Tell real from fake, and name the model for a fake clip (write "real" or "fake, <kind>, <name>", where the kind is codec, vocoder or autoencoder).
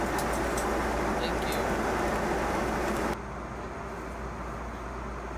real